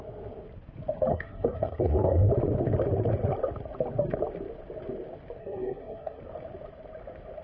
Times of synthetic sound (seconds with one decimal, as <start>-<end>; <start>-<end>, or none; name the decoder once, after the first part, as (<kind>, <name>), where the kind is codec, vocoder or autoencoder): 1.1-2.3 (codec, SNAC); 5.4-6.2